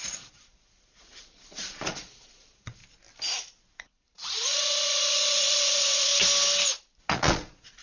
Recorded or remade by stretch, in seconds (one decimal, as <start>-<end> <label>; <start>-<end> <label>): 0.0-2.8 remade; 2.8-3.7 recorded; 3.7-6.1 remade; 6.1-7.1 recorded; 7.1-7.8 remade